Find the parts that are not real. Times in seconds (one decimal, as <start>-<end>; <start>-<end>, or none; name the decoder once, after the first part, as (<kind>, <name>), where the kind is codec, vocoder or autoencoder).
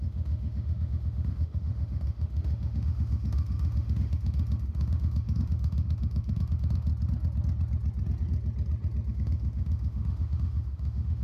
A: 0.0-6.9 (autoencoder, DAC-VAE); 9.1-11.2